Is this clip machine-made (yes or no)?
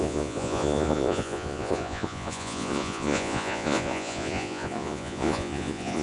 yes